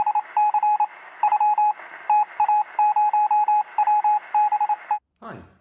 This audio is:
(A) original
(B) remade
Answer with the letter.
A